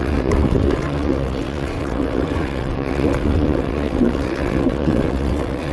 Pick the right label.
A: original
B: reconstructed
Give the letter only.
B